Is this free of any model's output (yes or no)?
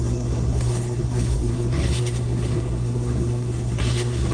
no